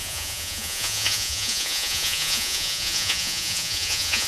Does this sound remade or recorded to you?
remade